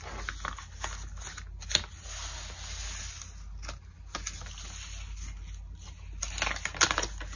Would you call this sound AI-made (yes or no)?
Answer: no